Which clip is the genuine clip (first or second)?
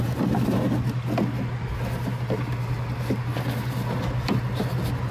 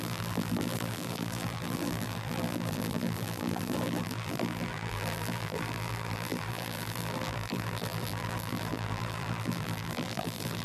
first